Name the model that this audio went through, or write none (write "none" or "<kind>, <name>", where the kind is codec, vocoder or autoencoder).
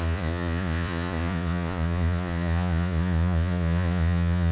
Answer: vocoder, Vocos